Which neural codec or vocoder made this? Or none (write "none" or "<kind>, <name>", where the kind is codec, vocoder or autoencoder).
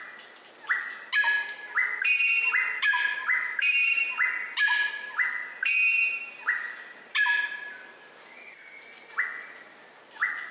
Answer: none